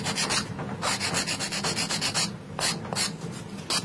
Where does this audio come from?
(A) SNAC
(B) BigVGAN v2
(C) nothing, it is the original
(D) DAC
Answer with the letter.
C